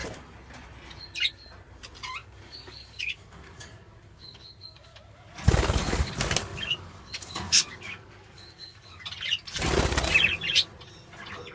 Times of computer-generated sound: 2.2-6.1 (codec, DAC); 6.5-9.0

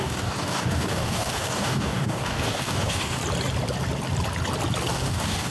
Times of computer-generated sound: 0.0-3.2 (codec, DAC); 4.9-5.5